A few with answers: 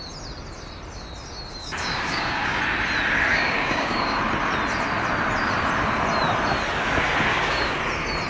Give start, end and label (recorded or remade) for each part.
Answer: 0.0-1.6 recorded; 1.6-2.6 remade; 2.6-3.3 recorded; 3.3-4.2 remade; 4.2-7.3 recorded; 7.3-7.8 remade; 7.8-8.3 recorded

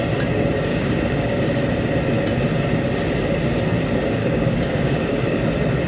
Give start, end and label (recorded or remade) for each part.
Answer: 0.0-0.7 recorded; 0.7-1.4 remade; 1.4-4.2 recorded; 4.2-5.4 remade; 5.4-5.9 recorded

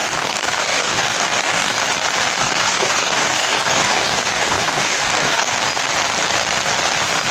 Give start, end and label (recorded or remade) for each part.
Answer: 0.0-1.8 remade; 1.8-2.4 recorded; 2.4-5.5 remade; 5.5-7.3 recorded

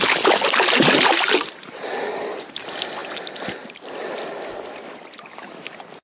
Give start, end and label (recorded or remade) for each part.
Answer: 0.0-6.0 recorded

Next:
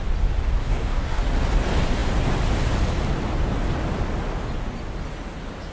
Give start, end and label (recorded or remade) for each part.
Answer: 0.0-0.6 recorded; 0.6-1.2 remade; 1.2-5.7 recorded